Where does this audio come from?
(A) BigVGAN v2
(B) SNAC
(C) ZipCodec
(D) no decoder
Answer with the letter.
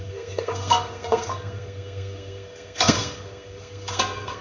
B